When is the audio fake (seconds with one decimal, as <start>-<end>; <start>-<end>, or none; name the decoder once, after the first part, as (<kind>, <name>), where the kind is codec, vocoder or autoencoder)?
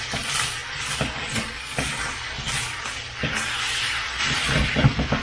none